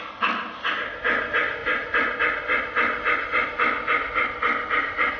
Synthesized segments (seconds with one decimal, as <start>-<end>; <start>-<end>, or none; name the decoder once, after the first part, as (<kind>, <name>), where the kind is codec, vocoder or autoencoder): 1.6-2.2 (vocoder, Vocos)